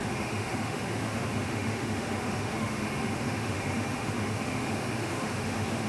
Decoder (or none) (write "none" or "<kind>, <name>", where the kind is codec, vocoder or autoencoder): autoencoder, DAC-VAE